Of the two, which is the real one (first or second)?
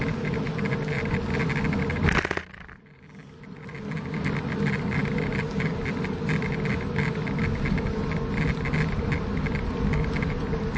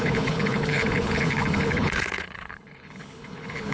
first